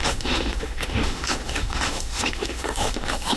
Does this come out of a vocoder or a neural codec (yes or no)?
yes